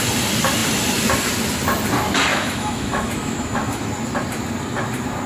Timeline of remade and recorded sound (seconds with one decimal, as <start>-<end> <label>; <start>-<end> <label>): 0.0-2.3 recorded; 2.3-3.9 remade; 3.9-5.3 recorded